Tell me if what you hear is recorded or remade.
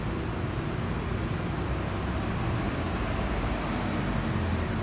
recorded